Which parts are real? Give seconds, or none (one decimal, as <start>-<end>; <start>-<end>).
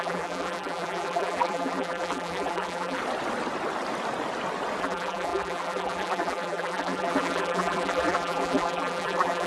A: 3.0-4.8